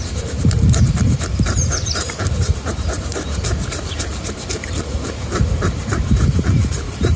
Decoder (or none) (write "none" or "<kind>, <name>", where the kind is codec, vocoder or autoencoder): vocoder, BigVGAN v2